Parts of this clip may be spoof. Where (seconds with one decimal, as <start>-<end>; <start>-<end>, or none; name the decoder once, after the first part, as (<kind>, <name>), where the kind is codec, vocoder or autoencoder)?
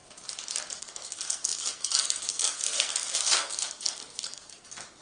0.8-5.0 (codec, SNAC)